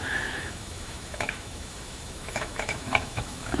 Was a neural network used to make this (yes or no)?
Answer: yes